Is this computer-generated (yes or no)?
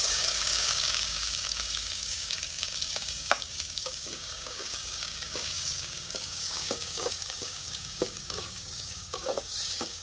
yes